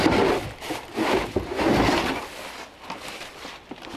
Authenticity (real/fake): real